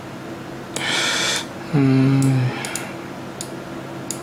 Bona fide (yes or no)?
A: yes